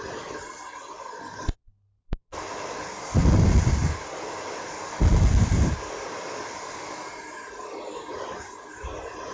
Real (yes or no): yes